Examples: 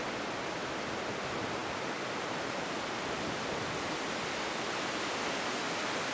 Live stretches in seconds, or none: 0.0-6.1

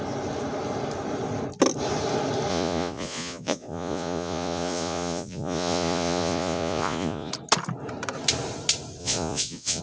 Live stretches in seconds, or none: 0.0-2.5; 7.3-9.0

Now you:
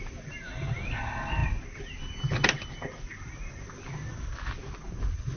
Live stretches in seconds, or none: 0.0-5.4